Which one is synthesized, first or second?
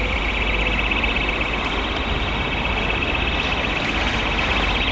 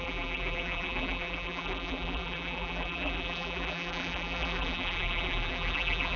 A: second